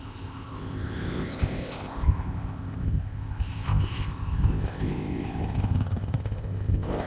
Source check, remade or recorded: remade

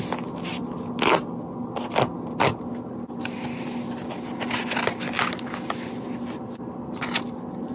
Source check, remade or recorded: recorded